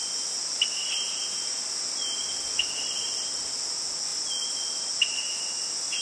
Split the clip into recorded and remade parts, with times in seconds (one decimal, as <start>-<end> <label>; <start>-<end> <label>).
0.0-6.0 recorded